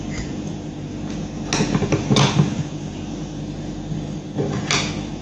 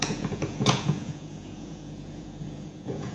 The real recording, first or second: first